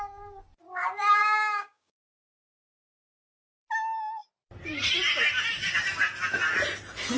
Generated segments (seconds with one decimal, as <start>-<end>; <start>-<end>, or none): 1.2-2.3